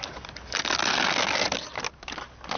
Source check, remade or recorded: recorded